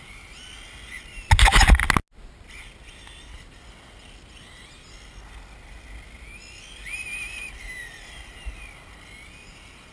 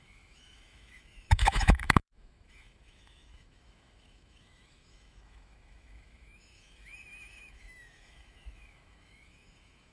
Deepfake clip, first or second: second